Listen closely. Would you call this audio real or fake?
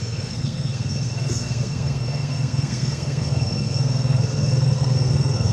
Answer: fake